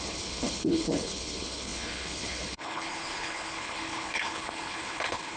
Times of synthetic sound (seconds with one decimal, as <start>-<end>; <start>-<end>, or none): 0.0-5.4